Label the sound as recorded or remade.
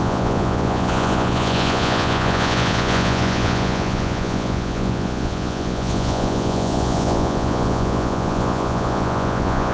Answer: remade